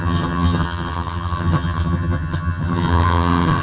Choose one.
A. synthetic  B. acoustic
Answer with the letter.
A